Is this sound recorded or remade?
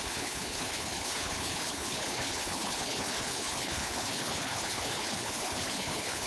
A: remade